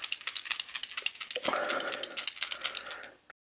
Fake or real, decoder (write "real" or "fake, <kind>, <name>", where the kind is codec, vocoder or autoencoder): real